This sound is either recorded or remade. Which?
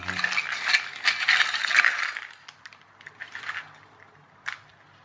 recorded